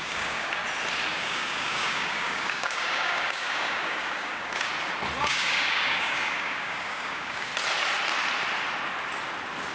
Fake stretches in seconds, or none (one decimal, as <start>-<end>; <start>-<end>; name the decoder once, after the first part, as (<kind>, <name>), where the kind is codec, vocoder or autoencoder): 0.0-0.6 (codec, DAC); 1.1-4.7; 5.2-7.5